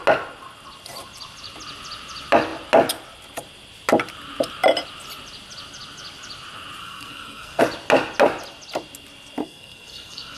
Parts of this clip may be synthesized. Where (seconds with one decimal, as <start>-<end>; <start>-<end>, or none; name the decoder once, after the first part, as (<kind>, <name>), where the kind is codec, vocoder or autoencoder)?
6.8-7.6 (codec, SNAC); 9.4-10.4